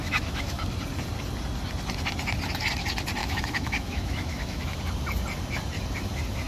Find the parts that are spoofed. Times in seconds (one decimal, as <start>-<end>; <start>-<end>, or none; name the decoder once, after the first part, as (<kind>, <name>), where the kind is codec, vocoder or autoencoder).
0.0-0.6 (autoencoder, DAC-VAE); 3.2-4.8